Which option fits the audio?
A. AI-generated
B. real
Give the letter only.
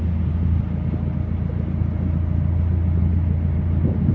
B